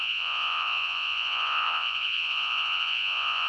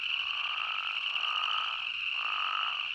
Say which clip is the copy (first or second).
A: first